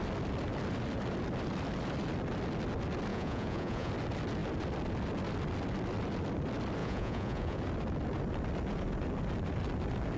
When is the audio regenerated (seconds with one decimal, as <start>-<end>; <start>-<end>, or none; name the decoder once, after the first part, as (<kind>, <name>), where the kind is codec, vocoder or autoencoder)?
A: 3.1-3.9 (vocoder, Vocos); 6.8-7.6